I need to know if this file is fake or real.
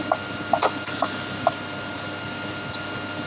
real